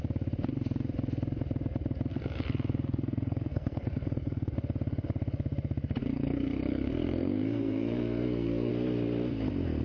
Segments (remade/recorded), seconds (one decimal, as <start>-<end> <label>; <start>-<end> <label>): 0.0-2.1 recorded; 2.1-4.5 remade; 4.5-6.0 recorded; 6.0-8.7 remade; 8.7-9.8 recorded

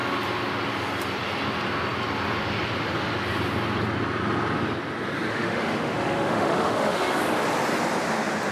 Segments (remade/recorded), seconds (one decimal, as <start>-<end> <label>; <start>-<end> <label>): 0.0-5.3 recorded; 5.3-7.2 remade; 7.2-8.5 recorded